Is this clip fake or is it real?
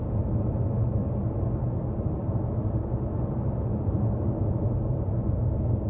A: real